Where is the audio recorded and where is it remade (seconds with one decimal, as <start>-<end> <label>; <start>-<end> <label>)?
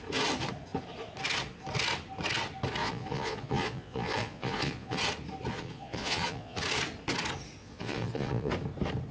0.0-2.8 recorded; 2.8-5.0 remade; 5.0-5.5 recorded; 5.5-6.6 remade; 6.6-7.6 recorded; 7.6-8.5 remade; 8.5-9.1 recorded